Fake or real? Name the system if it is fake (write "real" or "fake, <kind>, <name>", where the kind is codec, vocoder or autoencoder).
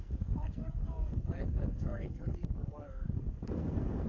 fake, codec, SNAC